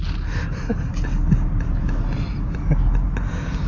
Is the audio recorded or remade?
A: recorded